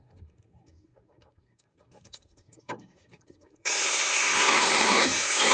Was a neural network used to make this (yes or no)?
yes